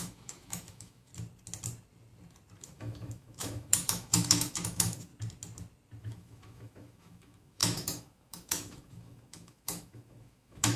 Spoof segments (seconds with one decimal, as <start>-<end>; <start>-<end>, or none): 0.0-1.1; 2.6-5.1; 6.0-10.8